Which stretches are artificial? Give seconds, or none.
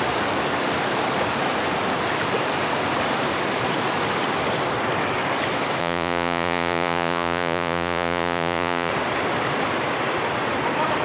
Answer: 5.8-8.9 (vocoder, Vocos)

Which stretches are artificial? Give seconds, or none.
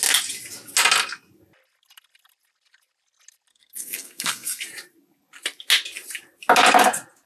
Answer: 3.5-4.6 (codec, SNAC)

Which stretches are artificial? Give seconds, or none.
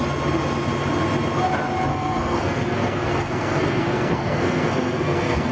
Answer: 1.9-5.5 (codec, SNAC)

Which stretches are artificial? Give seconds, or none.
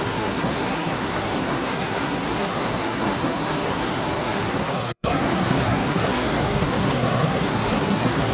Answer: 0.0-8.3 (codec, SNAC)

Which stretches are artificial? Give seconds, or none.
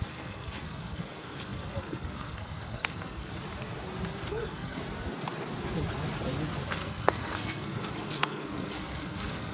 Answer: 0.0-3.3 (codec, SNAC); 4.3-4.8; 6.7-9.5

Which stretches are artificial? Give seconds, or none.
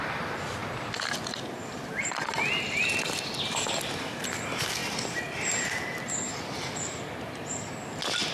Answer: none